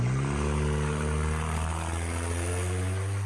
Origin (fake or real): real